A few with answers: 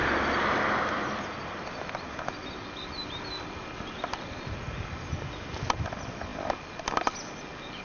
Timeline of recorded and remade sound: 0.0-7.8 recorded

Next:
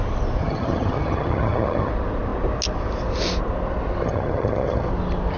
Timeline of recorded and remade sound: 0.0-0.4 recorded; 0.4-1.9 remade; 1.9-4.0 recorded; 4.0-4.9 remade; 4.9-5.4 recorded